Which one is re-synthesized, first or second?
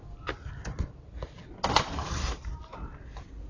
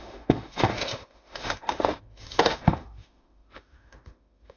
second